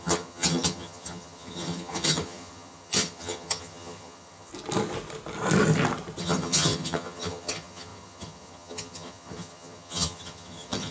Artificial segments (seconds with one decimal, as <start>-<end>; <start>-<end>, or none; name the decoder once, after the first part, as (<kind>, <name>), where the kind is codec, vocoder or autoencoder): 0.0-4.5 (vocoder, HiFi-GAN); 6.2-10.9